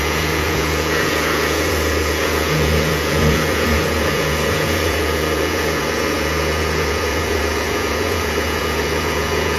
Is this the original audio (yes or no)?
no